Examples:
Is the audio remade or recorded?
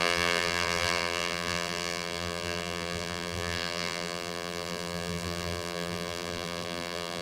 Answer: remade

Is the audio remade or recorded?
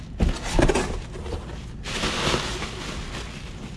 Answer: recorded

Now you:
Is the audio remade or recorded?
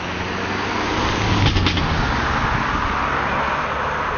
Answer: recorded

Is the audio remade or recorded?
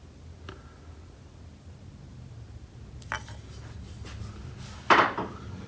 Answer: recorded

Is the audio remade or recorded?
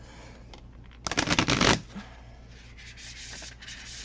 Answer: recorded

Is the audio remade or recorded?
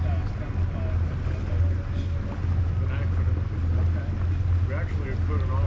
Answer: recorded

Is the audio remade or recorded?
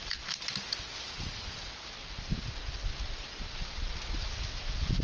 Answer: recorded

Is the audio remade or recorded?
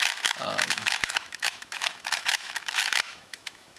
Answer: remade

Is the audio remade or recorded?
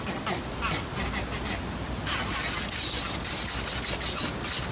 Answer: recorded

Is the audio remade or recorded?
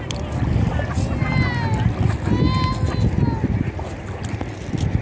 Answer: recorded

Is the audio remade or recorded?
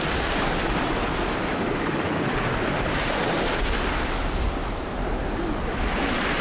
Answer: recorded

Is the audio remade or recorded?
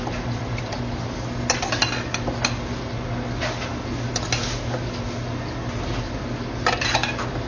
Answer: recorded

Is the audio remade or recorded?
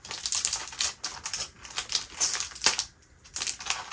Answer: recorded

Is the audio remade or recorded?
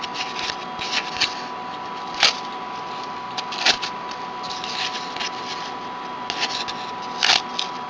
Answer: recorded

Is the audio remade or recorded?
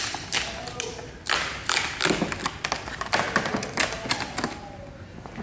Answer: recorded